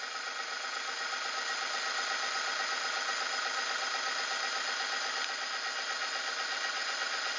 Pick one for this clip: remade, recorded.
recorded